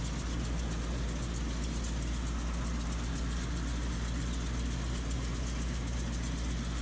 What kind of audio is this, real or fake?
real